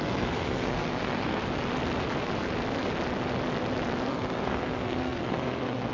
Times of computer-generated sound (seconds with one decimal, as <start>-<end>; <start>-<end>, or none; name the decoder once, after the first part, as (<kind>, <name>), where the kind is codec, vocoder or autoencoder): 0.0-1.4 (codec, SNAC); 4.1-5.9